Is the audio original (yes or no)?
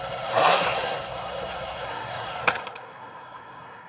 no